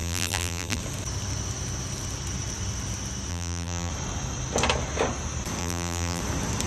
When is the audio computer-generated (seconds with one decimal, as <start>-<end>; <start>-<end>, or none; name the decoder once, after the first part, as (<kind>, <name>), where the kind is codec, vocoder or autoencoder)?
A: 0.0-0.8 (vocoder, BigVGAN v2); 3.3-3.9; 5.6-6.2